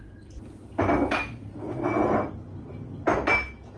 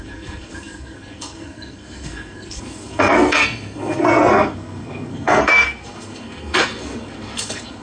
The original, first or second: first